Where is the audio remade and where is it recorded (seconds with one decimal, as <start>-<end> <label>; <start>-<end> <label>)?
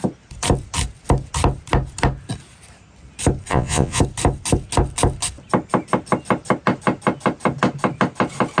0.0-3.5 recorded; 3.5-4.0 remade; 4.0-8.6 recorded